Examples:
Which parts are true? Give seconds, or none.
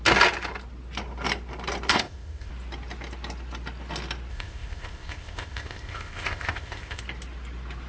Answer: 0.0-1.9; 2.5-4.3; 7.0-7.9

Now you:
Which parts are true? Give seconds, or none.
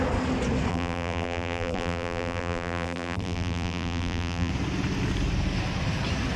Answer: 0.0-0.7; 4.5-6.4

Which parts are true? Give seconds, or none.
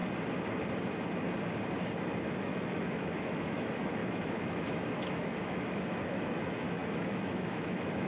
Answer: 0.0-2.4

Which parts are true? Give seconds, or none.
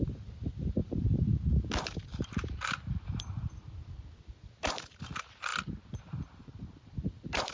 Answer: 0.0-0.8; 1.4-2.1; 4.3-7.5